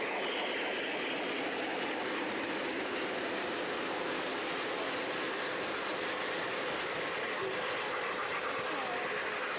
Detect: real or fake real